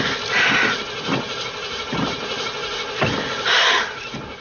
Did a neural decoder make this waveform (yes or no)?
no